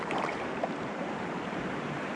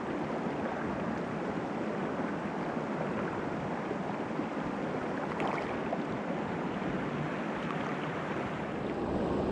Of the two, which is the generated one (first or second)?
first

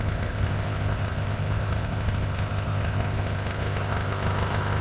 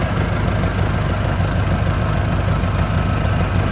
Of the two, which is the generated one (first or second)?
first